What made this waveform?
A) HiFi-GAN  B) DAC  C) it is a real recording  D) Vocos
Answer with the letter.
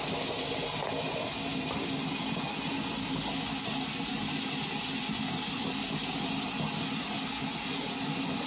C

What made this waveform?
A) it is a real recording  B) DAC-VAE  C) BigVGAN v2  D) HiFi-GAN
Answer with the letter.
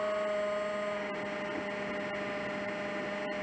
A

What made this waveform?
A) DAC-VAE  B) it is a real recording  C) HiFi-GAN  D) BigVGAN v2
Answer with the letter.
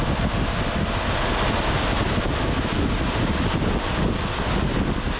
B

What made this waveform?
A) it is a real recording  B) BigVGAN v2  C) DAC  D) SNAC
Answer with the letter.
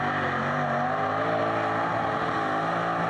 A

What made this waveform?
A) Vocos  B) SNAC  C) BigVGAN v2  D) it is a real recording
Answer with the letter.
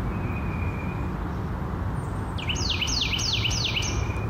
D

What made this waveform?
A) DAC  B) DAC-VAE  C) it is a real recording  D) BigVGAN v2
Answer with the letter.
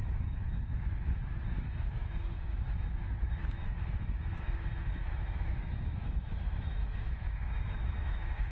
B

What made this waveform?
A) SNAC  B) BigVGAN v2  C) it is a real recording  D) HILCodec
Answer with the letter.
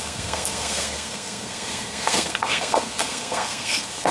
A